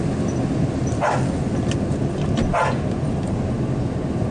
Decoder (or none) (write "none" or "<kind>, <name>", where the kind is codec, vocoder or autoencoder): none